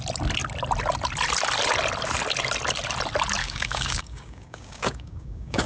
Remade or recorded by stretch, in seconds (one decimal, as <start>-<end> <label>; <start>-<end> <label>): 0.0-3.4 recorded; 3.4-5.7 remade